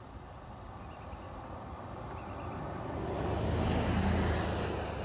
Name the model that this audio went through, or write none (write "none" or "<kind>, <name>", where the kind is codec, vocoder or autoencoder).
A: none